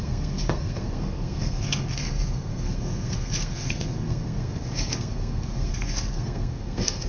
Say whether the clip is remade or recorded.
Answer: remade